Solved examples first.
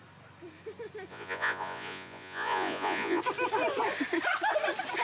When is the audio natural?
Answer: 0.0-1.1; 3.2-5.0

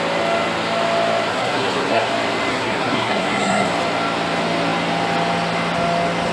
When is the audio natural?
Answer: 0.0-1.3; 2.1-2.5; 3.7-6.3

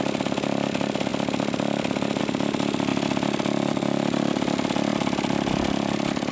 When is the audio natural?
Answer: 0.0-6.3

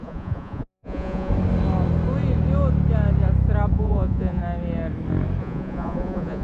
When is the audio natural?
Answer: 1.3-3.7; 4.4-5.4

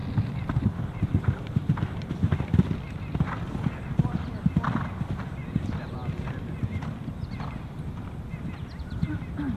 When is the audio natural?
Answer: none

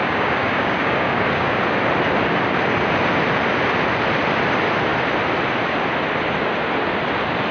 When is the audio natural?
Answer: 1.6-7.5

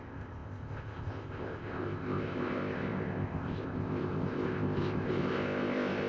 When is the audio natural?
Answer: none